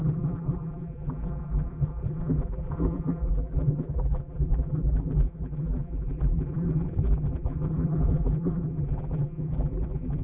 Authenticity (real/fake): fake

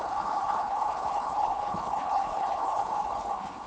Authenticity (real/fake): fake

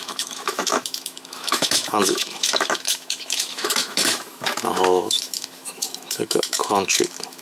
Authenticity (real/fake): fake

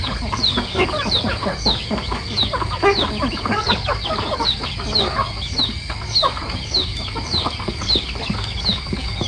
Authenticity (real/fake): fake